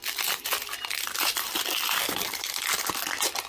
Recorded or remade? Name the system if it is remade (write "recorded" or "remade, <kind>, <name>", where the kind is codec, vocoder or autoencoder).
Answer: recorded